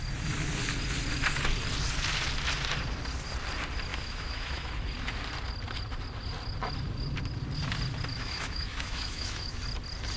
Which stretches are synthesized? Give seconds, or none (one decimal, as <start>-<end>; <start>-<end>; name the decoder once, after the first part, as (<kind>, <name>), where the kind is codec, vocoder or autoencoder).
3.9-4.7 (autoencoder, DAC-VAE); 8.1-9.6